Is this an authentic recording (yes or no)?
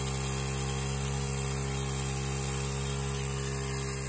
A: yes